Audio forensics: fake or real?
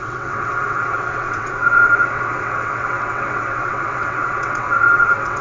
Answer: fake